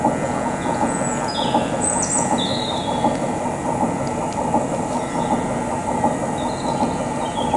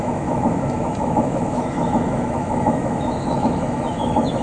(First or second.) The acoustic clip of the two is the first